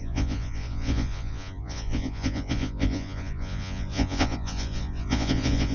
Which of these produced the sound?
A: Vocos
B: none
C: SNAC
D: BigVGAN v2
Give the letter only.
A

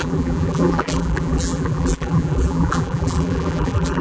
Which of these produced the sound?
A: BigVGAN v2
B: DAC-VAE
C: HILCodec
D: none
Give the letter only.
A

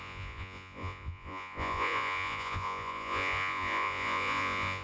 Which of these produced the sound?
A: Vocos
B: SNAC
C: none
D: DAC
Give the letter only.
A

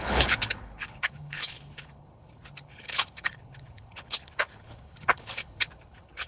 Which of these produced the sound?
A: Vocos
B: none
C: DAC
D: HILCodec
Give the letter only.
D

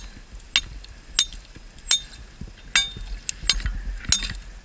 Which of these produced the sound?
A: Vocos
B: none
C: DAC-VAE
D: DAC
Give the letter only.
B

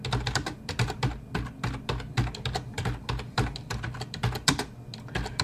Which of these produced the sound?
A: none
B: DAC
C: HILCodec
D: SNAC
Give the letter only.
A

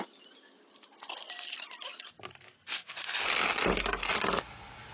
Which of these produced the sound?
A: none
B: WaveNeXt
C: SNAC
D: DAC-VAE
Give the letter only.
A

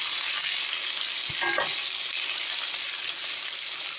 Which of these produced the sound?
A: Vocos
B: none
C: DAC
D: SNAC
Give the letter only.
B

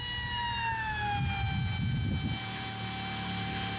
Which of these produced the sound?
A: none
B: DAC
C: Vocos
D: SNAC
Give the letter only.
A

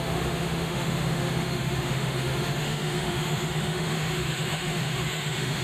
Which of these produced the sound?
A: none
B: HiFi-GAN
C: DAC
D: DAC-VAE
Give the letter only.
D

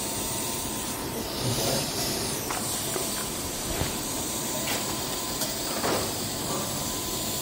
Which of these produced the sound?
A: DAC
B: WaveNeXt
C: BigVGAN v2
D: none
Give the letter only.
C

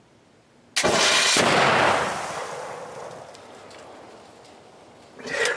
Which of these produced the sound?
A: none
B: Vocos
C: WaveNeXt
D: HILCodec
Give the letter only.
A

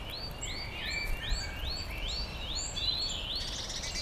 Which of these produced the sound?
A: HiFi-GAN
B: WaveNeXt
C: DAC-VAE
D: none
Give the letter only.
D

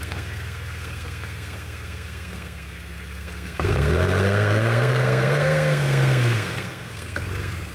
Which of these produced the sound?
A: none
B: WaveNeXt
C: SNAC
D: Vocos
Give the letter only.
C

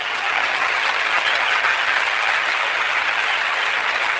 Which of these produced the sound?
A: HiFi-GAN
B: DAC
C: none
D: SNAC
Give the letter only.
A